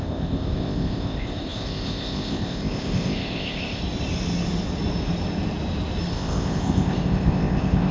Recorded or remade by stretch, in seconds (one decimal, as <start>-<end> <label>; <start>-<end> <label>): 0.0-3.8 remade; 3.8-6.1 recorded; 6.1-7.9 remade